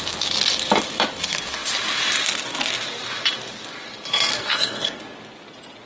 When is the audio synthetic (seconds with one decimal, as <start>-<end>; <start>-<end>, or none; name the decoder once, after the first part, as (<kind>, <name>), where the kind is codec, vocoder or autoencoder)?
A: 4.3-5.0 (codec, SNAC)